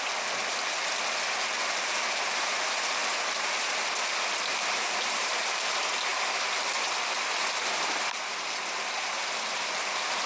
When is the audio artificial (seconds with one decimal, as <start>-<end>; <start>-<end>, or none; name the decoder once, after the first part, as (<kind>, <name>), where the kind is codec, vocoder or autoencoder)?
4.5-5.3 (vocoder, BigVGAN v2)